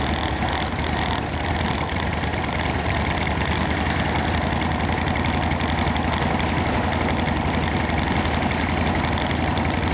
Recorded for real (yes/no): yes